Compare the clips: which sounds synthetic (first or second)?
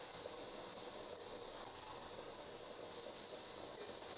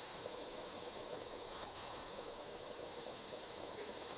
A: second